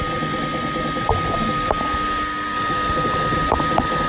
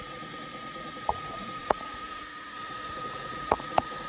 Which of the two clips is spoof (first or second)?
second